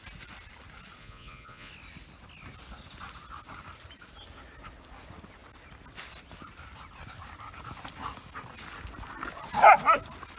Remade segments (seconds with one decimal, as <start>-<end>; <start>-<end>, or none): 1.0-1.7